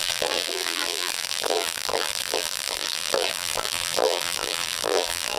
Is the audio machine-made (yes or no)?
yes